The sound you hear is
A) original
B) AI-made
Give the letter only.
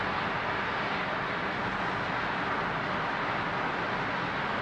A